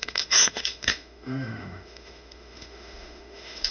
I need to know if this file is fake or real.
fake